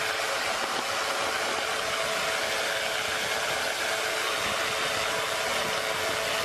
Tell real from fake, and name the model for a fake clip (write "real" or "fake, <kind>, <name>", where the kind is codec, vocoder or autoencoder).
real